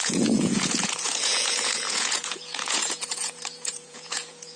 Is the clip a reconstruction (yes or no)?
yes